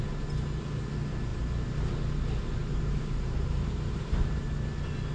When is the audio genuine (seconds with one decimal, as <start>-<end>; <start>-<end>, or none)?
0.0-2.6; 4.4-5.1